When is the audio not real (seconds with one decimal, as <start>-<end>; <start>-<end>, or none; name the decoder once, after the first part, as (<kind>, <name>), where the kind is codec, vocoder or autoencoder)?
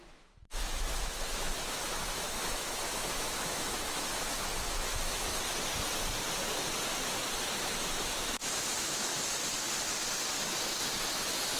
0.0-5.3 (autoencoder, DAC-VAE); 7.7-9.1; 11.1-11.6